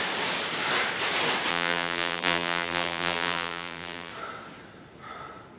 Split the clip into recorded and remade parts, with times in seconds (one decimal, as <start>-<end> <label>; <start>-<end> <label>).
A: 0.0-1.5 recorded; 1.5-4.1 remade; 4.1-5.6 recorded